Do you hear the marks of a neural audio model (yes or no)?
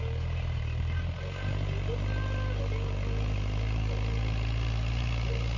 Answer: no